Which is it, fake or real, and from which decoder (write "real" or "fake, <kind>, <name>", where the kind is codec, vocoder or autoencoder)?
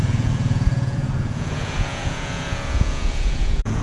fake, vocoder, Vocos